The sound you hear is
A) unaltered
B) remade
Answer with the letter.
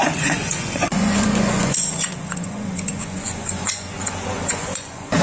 B